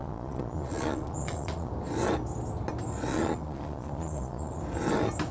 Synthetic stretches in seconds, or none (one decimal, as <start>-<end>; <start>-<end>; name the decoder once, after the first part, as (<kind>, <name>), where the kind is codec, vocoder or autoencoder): 0.0-1.7 (vocoder, Vocos); 3.1-4.6